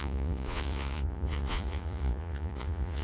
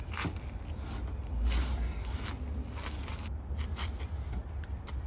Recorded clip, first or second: second